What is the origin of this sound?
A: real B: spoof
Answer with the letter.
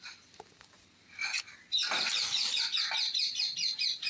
A